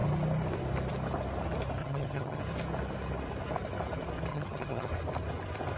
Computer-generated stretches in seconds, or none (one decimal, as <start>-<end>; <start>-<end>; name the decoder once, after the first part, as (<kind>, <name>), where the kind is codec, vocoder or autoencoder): 1.8-2.4 (vocoder, HiFi-GAN); 4.3-4.9